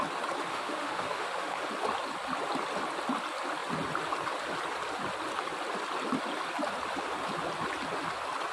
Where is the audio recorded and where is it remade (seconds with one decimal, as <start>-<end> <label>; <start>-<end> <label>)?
0.0-0.5 recorded; 0.5-1.6 remade; 1.6-8.5 recorded